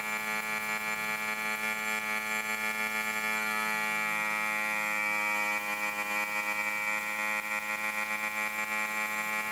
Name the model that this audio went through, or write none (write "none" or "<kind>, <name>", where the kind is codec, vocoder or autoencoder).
none